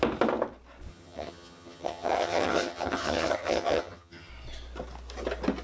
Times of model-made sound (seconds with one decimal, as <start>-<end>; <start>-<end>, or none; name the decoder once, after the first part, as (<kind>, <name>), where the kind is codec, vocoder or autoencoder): 0.9-4.3 (vocoder, HiFi-GAN)